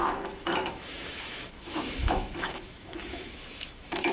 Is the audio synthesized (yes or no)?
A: yes